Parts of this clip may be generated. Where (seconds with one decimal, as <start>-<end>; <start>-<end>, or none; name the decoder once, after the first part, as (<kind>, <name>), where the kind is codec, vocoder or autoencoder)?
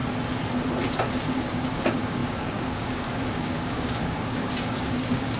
1.3-5.4 (codec, DAC)